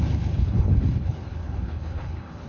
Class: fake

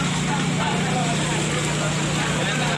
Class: real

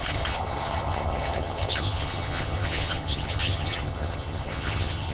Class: fake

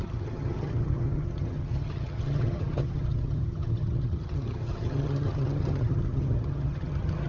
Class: fake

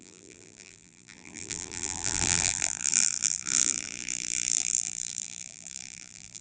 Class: fake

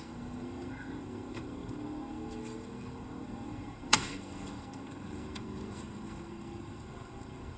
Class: fake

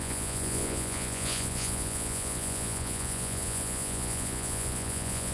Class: fake